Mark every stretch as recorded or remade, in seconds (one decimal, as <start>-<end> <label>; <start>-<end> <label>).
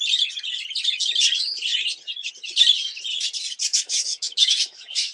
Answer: 0.0-3.7 recorded; 3.7-5.1 remade